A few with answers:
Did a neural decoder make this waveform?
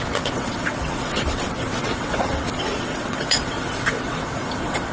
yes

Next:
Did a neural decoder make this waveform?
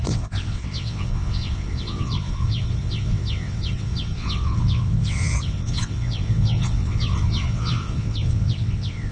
yes